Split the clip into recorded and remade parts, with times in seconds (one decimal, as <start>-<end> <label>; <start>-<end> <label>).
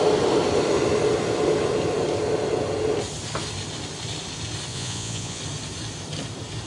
0.0-4.7 recorded; 4.7-5.4 remade; 5.4-6.7 recorded